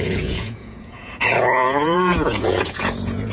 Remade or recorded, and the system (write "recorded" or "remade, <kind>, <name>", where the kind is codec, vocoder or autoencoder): remade, vocoder, Vocos